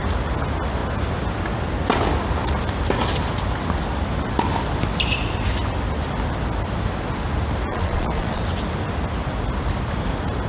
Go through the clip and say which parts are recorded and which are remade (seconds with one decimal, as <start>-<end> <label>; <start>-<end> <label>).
0.0-7.7 recorded; 7.7-8.4 remade; 8.4-10.5 recorded